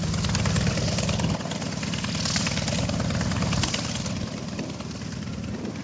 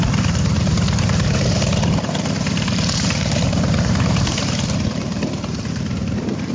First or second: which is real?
first